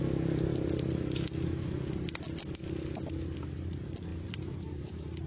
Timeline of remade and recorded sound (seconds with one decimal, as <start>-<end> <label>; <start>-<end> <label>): 0.0-4.1 recorded; 4.1-4.8 remade; 4.8-5.3 recorded

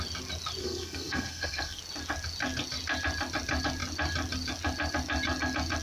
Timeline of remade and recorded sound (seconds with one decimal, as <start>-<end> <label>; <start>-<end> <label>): 0.0-0.6 recorded; 0.6-1.8 remade; 1.8-5.8 recorded